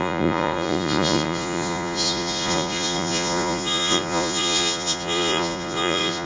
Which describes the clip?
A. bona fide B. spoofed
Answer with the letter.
B